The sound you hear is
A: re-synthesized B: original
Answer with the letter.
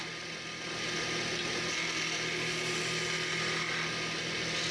B